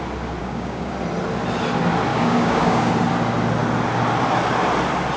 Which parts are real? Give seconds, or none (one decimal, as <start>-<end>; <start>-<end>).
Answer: 0.0-0.4; 0.9-2.1; 2.9-5.2